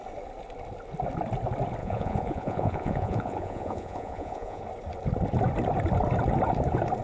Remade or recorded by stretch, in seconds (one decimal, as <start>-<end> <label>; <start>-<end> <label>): 0.0-1.8 recorded; 1.8-4.6 remade; 4.6-7.0 recorded